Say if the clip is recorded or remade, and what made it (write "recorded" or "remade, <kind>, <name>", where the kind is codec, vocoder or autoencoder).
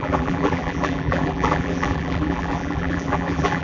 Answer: remade, vocoder, BigVGAN v2